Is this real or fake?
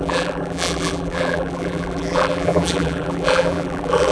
fake